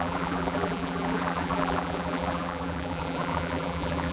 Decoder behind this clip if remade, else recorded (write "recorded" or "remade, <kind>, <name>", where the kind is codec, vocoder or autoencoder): remade, vocoder, BigVGAN v2